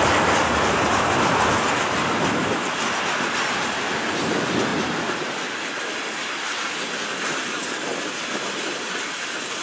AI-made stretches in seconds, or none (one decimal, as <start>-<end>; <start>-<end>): none